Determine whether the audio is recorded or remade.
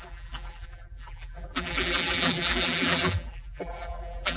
remade